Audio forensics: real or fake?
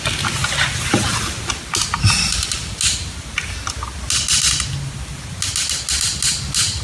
real